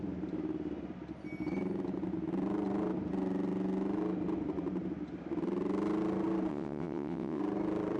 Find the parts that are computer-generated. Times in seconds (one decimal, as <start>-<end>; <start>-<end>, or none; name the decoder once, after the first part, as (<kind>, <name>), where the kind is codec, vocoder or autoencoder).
6.5-7.4 (vocoder, WaveNeXt)